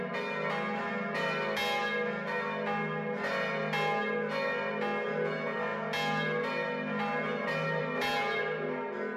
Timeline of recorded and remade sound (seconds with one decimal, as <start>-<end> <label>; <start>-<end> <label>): 0.0-9.2 recorded

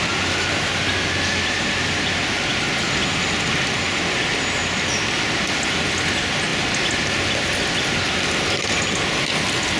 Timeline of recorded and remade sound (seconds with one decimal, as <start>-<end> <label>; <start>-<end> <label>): 0.0-9.8 recorded

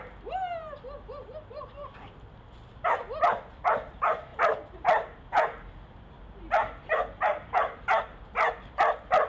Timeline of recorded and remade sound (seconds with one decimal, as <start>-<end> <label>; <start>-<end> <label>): 0.0-9.3 recorded

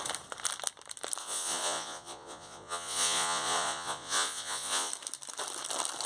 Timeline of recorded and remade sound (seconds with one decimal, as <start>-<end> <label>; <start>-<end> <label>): 0.0-1.2 recorded; 1.2-4.9 remade; 4.9-6.1 recorded

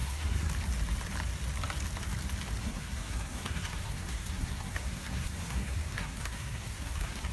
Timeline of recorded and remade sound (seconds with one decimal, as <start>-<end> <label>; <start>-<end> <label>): 0.0-0.5 remade; 0.5-2.6 recorded; 2.6-7.3 remade

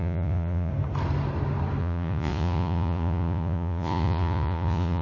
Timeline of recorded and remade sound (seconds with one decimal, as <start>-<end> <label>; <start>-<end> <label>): 0.0-0.7 remade; 0.7-1.8 recorded; 1.8-5.0 remade

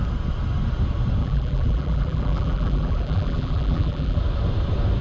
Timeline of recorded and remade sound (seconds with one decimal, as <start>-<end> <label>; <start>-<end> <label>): 0.0-1.2 recorded; 1.2-4.2 remade; 4.2-5.0 recorded